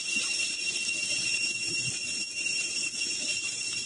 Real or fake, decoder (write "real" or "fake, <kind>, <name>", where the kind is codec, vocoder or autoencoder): real